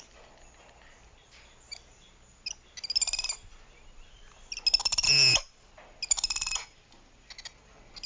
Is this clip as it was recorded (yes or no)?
yes